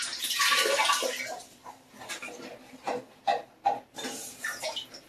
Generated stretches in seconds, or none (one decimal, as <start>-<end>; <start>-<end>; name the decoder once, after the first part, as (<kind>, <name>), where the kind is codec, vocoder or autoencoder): 0.0-0.8 (vocoder, BigVGAN v2); 1.3-5.1